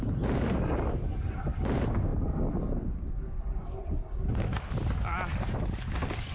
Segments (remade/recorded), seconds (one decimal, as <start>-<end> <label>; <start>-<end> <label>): 0.0-6.3 recorded